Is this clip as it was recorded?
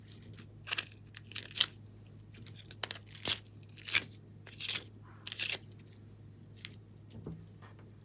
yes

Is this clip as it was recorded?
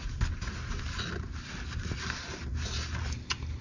yes